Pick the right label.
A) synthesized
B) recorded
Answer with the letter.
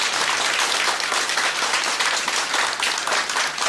B